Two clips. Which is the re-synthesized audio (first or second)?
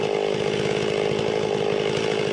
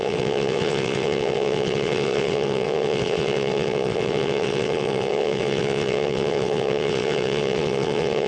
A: second